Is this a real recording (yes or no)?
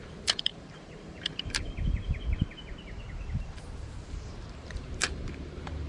no